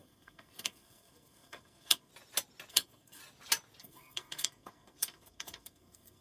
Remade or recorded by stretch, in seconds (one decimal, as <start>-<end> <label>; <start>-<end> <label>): 0.0-2.1 remade; 2.1-2.7 recorded; 2.7-3.2 remade; 3.2-3.8 recorded; 3.8-6.2 remade